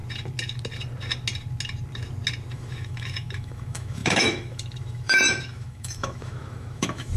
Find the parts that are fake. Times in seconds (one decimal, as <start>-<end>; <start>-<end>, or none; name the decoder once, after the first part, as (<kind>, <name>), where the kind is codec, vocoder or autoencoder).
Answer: 2.5-7.2 (autoencoder, DAC-VAE)